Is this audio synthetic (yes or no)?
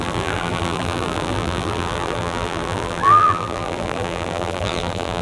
yes